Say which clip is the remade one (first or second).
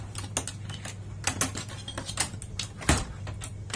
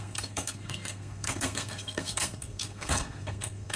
second